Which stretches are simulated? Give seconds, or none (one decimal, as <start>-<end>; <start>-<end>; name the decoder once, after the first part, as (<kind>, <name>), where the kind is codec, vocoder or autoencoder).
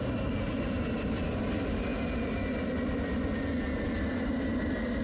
none